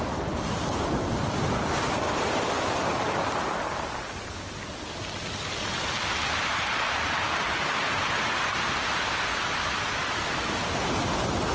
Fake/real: real